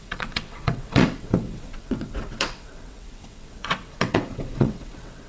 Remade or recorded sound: remade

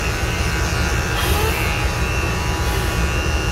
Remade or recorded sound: recorded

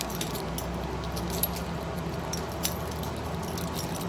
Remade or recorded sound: recorded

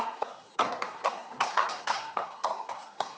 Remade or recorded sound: remade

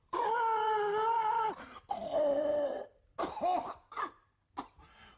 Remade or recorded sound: recorded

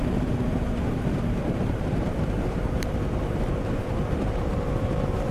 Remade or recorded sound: remade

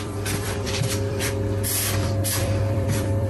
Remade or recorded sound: remade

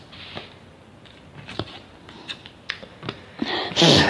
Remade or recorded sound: recorded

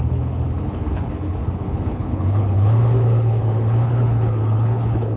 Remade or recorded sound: remade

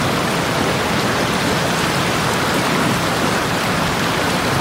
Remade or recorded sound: recorded